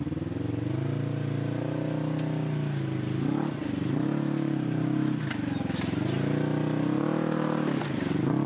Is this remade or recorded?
recorded